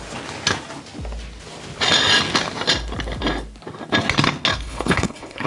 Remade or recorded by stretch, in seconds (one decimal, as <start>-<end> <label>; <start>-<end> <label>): 0.0-4.5 recorded; 4.5-5.5 remade